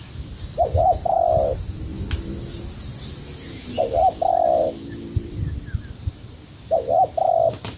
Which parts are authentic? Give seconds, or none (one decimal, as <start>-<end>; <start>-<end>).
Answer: 1.9-3.8